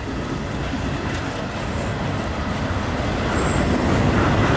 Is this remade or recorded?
recorded